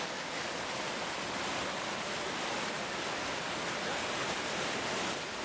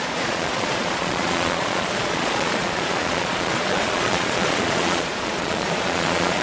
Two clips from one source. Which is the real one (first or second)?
first